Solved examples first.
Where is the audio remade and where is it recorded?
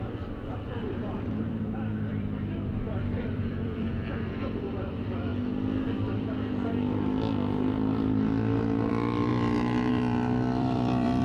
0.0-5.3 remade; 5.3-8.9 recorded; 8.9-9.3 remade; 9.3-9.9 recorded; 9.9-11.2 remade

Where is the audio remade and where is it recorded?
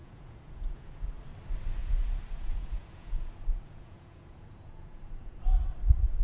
0.0-1.2 remade; 1.2-1.8 recorded; 1.8-5.4 remade; 5.4-6.2 recorded